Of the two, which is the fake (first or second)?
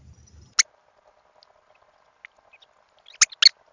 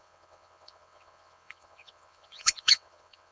second